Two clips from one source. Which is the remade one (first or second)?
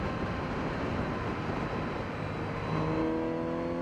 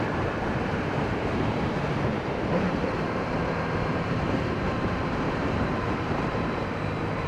second